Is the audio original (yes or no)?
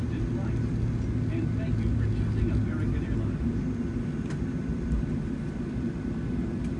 yes